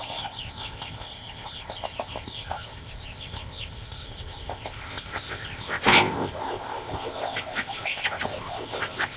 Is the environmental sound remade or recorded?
remade